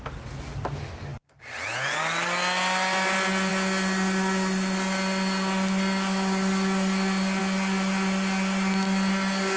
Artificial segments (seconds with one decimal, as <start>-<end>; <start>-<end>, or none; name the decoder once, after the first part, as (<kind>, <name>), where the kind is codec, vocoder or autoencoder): none

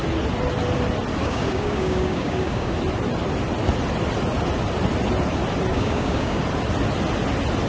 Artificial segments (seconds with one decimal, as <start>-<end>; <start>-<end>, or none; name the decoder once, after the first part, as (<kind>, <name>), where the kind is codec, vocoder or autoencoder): 1.2-2.7 (codec, DAC); 5.7-6.4

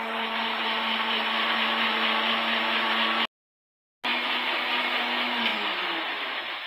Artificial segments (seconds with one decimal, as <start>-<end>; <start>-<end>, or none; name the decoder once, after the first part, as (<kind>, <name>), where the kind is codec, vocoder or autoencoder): none

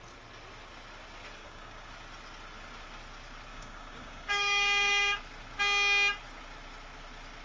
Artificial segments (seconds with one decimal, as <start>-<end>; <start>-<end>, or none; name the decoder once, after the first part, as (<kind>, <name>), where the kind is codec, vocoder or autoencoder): 1.4-1.9 (codec, DAC); 3.5-5.2

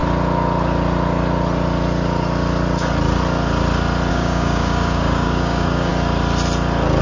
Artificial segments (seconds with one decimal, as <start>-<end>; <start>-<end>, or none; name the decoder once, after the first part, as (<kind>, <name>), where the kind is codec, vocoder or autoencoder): 4.1-5.9 (codec, DAC)

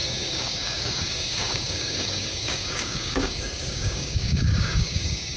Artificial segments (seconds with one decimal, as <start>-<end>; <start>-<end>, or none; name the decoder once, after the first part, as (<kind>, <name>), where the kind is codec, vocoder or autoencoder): 0.0-5.4 (codec, DAC)